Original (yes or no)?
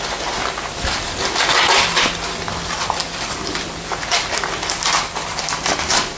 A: yes